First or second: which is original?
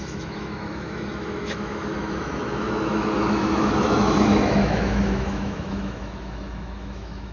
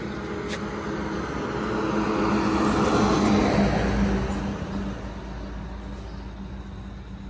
second